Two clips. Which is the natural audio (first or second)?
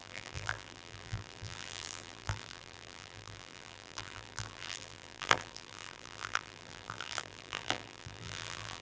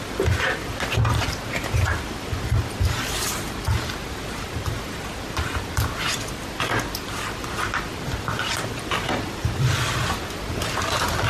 second